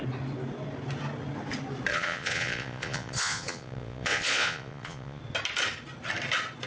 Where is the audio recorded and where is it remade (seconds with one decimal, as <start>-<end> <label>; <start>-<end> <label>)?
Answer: 0.0-1.9 recorded; 1.9-5.2 remade; 5.2-6.7 recorded